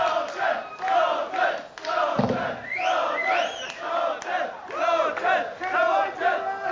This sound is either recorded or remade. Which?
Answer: recorded